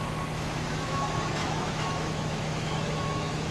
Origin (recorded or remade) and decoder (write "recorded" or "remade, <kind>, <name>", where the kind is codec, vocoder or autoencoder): remade, autoencoder, DAC-VAE